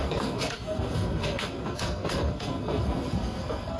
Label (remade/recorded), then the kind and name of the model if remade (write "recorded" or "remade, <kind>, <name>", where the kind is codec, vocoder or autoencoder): remade, codec, SNAC